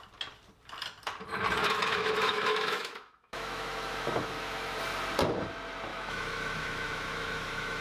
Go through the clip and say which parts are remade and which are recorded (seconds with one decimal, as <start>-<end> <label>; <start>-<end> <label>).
0.0-1.6 recorded; 1.6-4.8 remade; 4.8-5.9 recorded; 5.9-7.8 remade